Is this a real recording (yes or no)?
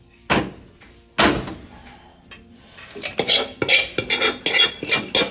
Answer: yes